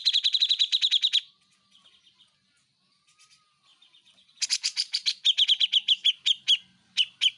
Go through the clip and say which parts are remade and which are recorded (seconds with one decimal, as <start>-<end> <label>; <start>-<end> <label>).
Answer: 0.0-7.4 recorded